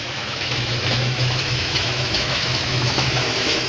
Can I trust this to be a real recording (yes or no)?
no